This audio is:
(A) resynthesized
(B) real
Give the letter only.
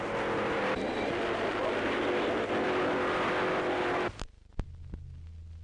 B